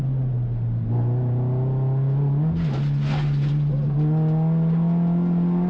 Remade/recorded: recorded